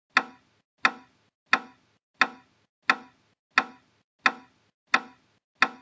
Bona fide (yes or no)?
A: yes